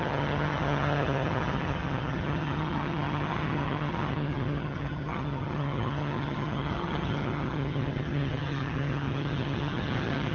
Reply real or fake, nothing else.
fake